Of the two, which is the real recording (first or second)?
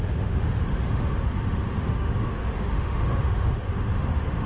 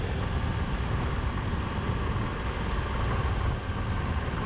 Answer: second